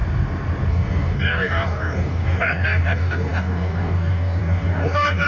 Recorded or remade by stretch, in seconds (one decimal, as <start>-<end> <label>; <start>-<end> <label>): 0.0-0.7 recorded; 0.7-5.3 remade